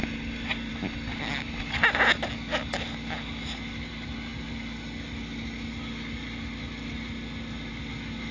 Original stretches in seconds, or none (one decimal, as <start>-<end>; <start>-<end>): 0.0-8.3